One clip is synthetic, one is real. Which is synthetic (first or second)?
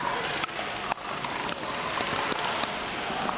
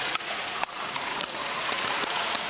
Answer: second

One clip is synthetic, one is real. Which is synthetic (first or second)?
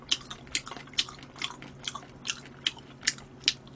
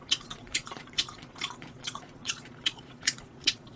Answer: second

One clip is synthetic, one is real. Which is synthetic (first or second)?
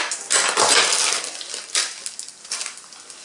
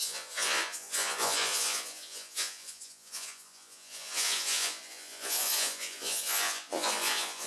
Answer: second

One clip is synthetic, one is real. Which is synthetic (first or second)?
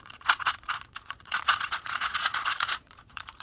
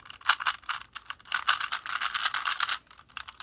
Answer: first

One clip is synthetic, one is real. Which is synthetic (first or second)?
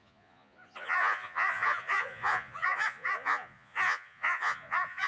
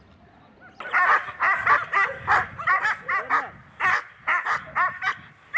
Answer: first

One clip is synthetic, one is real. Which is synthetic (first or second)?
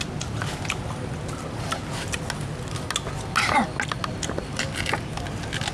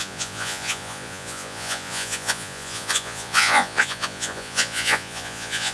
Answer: second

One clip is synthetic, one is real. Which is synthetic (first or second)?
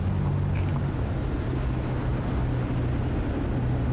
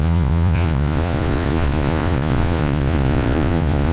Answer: second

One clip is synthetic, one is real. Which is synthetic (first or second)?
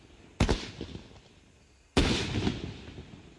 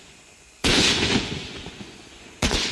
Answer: second